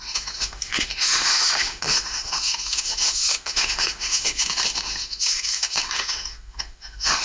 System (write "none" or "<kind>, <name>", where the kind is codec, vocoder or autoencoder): autoencoder, DAC-VAE